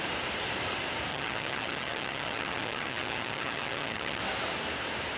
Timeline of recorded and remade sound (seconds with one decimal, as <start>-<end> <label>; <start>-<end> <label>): 0.0-1.1 recorded; 1.1-4.2 remade; 4.2-5.2 recorded